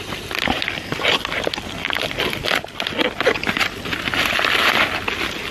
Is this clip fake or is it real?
real